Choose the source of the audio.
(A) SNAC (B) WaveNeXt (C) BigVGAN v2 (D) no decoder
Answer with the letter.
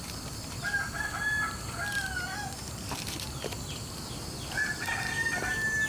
D